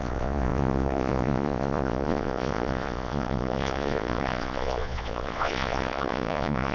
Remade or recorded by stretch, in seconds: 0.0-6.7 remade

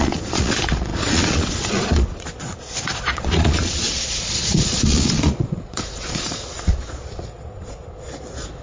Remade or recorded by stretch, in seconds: 0.0-8.6 remade

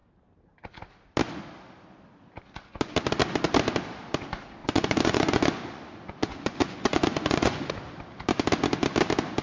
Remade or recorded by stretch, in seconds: 0.0-4.6 recorded; 4.6-7.7 remade; 7.7-9.4 recorded

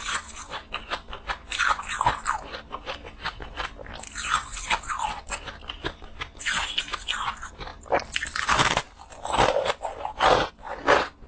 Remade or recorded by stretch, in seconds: 0.0-11.3 recorded

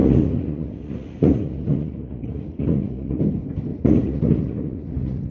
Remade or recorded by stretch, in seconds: 0.0-3.2 remade; 3.2-3.7 recorded; 3.7-5.3 remade

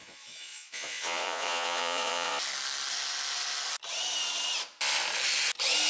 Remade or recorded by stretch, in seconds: 0.0-2.3 remade; 2.3-5.9 recorded

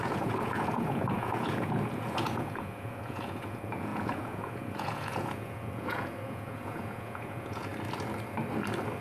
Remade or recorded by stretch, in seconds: 0.0-7.7 remade; 7.7-9.0 recorded